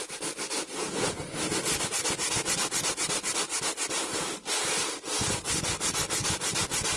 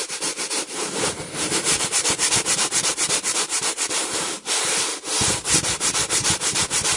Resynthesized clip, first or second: second